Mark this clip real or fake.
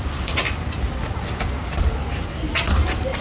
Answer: real